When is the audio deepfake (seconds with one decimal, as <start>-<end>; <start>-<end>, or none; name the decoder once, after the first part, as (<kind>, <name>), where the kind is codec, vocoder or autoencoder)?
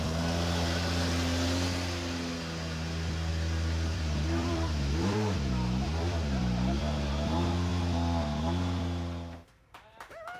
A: 3.3-7.1 (vocoder, BigVGAN v2)